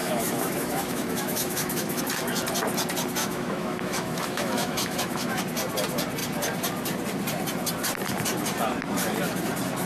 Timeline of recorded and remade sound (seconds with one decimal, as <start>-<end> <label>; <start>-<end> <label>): 0.0-2.0 remade; 2.0-3.2 recorded; 3.2-5.4 remade; 5.4-9.9 recorded